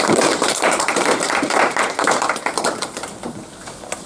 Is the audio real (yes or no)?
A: no